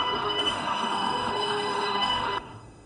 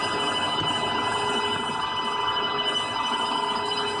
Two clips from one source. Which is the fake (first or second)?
first